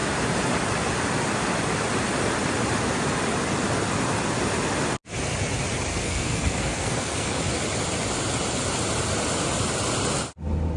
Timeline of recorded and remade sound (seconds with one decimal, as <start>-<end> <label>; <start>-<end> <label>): 0.0-5.9 recorded; 5.9-7.4 remade; 7.4-10.8 recorded